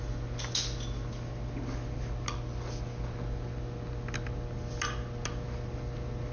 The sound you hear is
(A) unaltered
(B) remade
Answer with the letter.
A